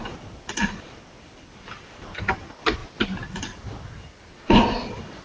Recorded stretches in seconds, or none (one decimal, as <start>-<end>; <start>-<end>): 2.8-3.4